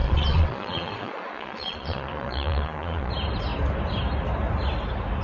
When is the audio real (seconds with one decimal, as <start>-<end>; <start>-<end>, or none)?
3.1-5.2

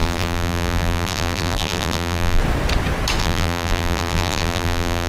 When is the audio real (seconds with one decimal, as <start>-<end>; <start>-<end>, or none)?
2.4-3.2

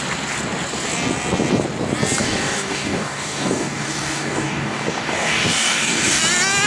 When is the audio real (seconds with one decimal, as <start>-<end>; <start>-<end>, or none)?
0.0-2.2; 6.2-6.7

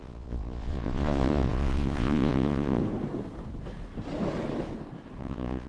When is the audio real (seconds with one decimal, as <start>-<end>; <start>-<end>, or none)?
2.8-5.2

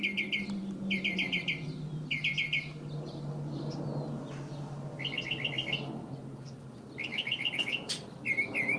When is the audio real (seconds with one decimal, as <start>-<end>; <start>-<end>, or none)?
0.0-7.1; 7.9-8.8

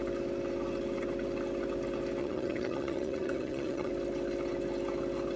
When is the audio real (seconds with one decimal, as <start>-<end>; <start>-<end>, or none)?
0.0-2.2; 3.9-5.4

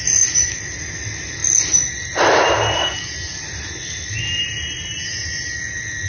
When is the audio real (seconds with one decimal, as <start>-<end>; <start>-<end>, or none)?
0.0-6.1